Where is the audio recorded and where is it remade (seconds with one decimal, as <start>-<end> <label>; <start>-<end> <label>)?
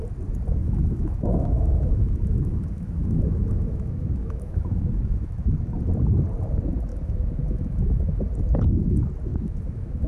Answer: 0.0-0.6 recorded; 0.6-5.5 remade; 5.5-6.9 recorded; 6.9-8.2 remade; 8.2-9.3 recorded; 9.3-10.1 remade